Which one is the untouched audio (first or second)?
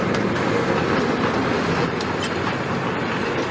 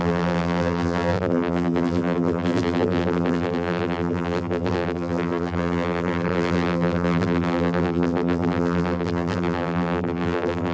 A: first